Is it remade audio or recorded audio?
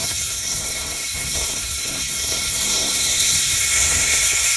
remade